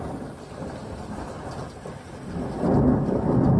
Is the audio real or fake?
real